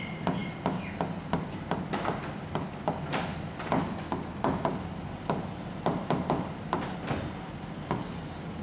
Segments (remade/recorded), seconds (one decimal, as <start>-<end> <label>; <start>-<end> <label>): 0.0-8.6 recorded